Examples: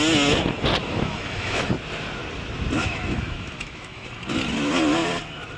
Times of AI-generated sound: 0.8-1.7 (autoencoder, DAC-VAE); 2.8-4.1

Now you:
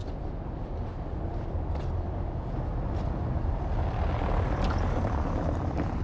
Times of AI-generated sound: none

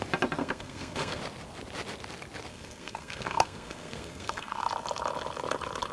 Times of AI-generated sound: 0.4-1.2 (codec, SNAC); 2.5-4.6